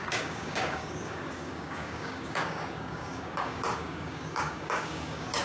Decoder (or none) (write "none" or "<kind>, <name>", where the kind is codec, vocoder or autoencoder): codec, DAC